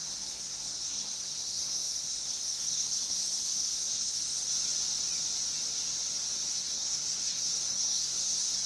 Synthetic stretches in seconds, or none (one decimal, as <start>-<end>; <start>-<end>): 0.0-4.4; 6.5-8.7